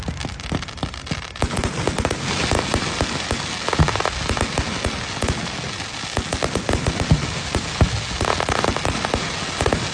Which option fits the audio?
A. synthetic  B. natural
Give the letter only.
B